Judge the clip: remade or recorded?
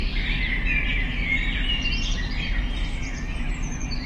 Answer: remade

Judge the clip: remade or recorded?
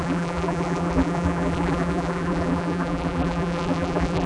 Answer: remade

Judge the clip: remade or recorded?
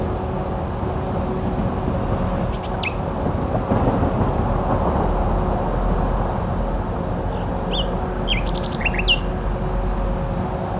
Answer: recorded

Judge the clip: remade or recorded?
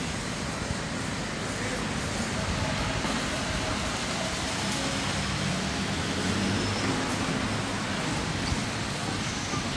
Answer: recorded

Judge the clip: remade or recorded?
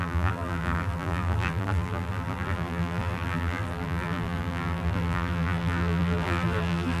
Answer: remade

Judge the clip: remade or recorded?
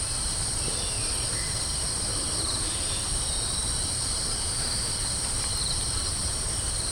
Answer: remade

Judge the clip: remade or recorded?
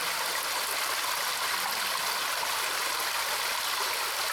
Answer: recorded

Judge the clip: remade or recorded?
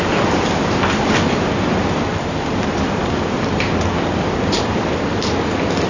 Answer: remade